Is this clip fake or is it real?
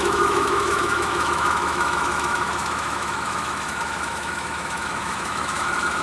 fake